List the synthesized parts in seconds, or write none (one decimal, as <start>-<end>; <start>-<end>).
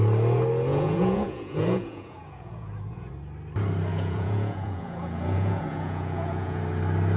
0.7-3.1; 3.9-6.6